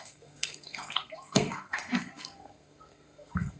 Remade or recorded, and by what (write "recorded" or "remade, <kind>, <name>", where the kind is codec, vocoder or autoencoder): remade, codec, SNAC